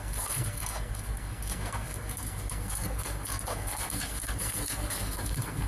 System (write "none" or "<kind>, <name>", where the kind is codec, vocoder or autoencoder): codec, SNAC